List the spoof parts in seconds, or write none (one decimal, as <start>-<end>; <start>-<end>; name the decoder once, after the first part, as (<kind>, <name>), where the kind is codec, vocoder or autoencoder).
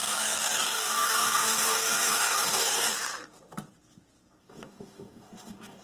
0.0-2.9 (codec, DAC); 4.4-5.8